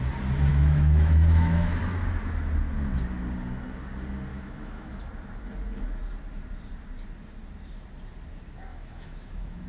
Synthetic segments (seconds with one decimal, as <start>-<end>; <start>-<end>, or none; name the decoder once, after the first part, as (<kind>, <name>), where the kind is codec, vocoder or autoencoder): 0.5-1.8 (autoencoder, DAC-VAE); 4.3-5.0; 8.7-9.7